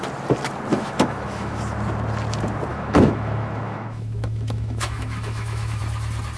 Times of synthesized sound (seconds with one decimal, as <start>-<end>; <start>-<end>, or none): 0.7-1.6; 2.7-5.8